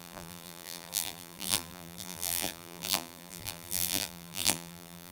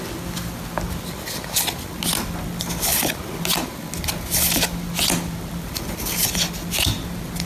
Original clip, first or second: second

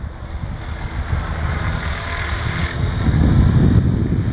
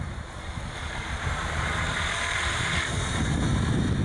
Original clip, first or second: first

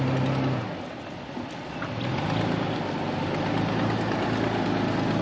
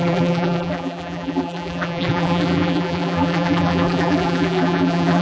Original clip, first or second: first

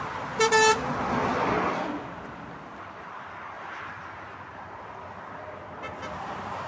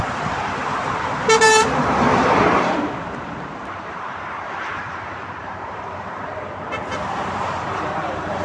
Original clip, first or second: first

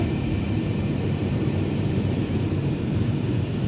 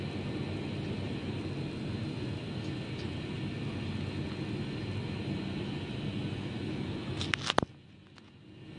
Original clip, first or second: second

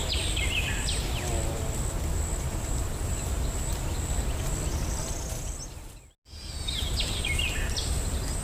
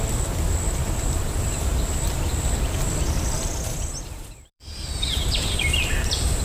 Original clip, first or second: first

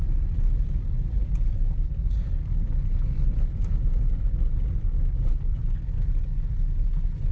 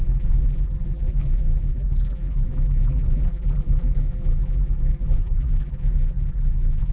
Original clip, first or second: first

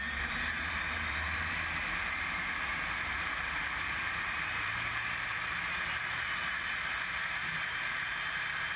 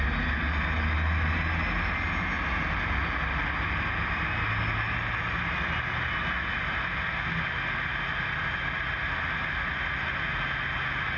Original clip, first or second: second